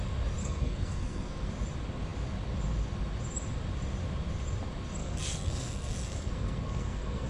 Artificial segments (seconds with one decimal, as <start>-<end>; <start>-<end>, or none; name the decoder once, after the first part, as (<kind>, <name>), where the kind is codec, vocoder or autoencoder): 0.4-1.5 (codec, SNAC); 5.0-7.3